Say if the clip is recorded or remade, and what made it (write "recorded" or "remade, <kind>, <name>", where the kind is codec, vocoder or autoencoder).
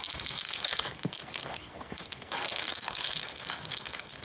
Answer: remade, codec, SNAC